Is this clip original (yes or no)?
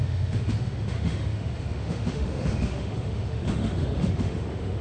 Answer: no